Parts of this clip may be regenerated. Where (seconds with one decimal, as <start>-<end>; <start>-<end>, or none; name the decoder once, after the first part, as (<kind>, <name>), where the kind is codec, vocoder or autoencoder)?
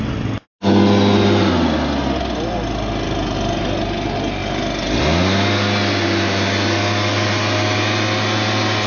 none